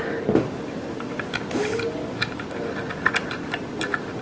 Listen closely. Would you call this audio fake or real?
real